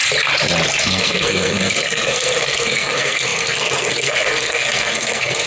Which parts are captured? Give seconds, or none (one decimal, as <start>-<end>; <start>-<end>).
0.0-0.8